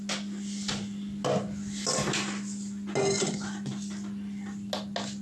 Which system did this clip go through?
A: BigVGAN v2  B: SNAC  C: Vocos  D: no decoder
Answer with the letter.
D